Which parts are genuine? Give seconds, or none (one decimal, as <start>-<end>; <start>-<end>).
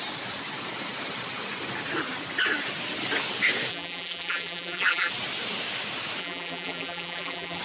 0.0-3.7; 5.1-6.2